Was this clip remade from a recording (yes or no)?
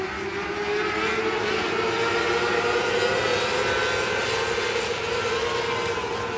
no